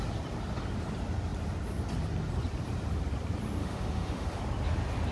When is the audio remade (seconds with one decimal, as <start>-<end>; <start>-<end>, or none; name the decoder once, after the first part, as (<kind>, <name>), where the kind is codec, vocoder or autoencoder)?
3.6-4.4 (autoencoder, DAC-VAE)